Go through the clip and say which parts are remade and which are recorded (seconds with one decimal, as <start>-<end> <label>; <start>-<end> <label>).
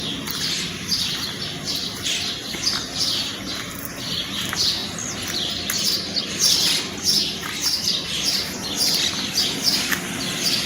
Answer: 0.0-10.7 recorded